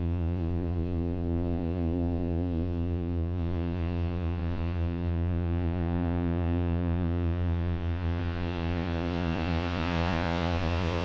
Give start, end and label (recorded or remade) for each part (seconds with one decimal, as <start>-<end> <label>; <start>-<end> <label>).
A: 0.0-11.0 remade